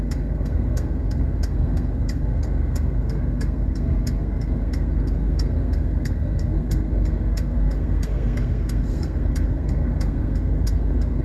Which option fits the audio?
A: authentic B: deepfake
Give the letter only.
B